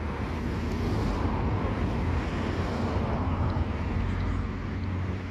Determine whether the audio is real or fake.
real